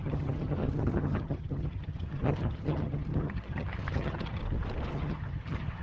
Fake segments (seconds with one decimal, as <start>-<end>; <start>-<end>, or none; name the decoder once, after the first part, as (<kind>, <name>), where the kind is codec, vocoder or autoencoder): 0.0-4.4 (vocoder, HiFi-GAN); 4.9-5.8